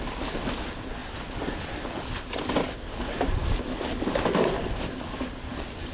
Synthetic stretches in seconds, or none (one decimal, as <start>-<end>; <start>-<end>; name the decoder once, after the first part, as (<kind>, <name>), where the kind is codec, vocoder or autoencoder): 3.4-4.6 (codec, DAC)